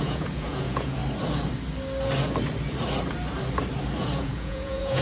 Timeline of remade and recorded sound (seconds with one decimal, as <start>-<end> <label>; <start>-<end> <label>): 0.0-1.0 remade; 1.0-4.0 recorded; 4.0-5.0 remade